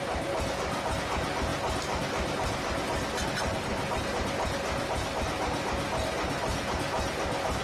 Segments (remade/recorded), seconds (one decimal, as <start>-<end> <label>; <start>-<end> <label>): 0.0-7.6 recorded